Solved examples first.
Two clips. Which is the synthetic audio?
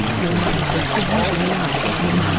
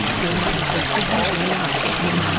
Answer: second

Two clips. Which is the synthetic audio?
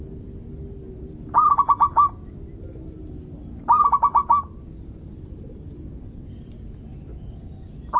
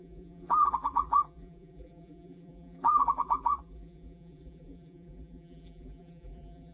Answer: second